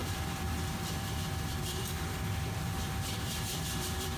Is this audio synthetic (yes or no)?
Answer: yes